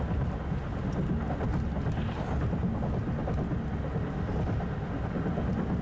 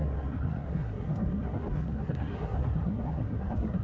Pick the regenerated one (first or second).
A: second